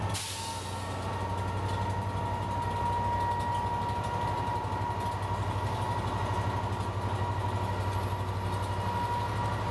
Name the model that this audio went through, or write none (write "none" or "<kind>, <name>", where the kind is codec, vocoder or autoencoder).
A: none